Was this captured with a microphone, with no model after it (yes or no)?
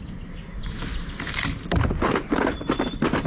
yes